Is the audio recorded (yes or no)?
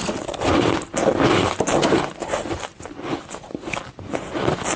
yes